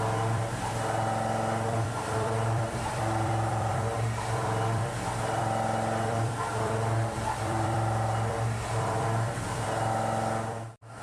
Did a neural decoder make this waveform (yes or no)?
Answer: yes